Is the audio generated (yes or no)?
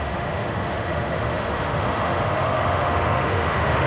yes